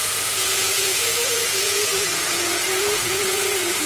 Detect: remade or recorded remade